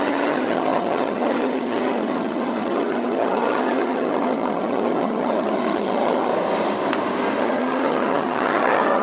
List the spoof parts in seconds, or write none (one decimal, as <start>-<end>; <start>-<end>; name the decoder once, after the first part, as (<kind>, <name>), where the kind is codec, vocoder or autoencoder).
0.0-6.3 (vocoder, HiFi-GAN); 7.4-9.0